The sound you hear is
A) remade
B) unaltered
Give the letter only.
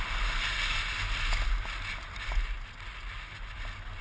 B